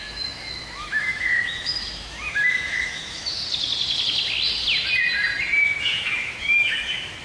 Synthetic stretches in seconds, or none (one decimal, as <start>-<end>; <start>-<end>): 0.0-3.4; 5.8-7.2